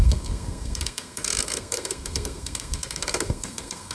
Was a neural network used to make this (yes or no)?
yes